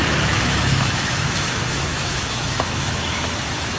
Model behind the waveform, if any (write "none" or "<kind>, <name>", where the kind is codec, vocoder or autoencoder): autoencoder, DAC-VAE